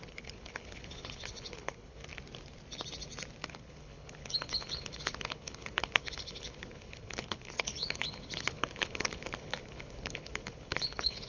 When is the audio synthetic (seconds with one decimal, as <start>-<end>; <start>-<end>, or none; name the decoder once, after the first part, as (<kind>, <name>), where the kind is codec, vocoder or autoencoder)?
0.0-2.0 (codec, HILCodec); 3.5-11.3